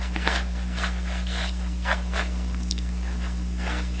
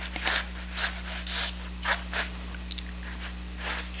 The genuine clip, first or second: second